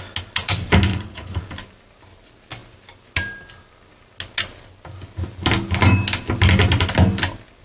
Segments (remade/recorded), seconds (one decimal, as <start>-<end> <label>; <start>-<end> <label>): 0.0-0.9 recorded; 0.9-1.4 remade; 1.4-7.6 recorded